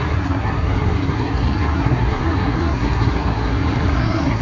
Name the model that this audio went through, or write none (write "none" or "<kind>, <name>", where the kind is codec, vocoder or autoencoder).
codec, SNAC